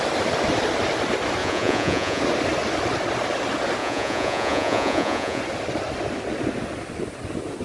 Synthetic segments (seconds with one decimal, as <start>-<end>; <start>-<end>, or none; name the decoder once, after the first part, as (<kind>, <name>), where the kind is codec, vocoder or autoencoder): 1.4-2.2 (vocoder, Vocos); 3.8-5.4